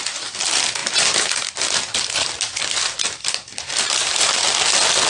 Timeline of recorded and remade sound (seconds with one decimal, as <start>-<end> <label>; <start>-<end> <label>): 0.0-3.5 recorded; 3.5-4.3 remade; 4.3-5.1 recorded